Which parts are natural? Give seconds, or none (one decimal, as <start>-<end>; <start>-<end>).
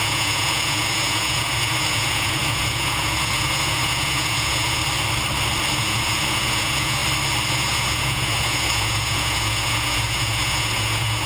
4.8-5.7; 7.0-7.5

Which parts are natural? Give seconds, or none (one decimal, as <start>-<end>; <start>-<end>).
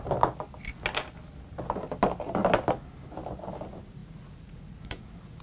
0.0-4.0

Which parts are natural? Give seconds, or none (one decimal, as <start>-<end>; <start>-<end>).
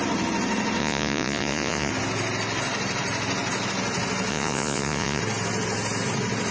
0.0-0.8; 1.9-4.3; 5.2-6.5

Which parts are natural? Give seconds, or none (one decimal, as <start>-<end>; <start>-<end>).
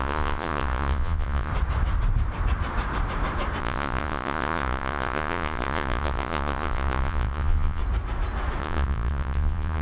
1.5-3.6; 7.8-8.6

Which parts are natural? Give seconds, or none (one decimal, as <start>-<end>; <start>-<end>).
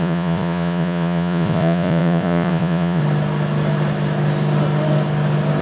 3.0-5.6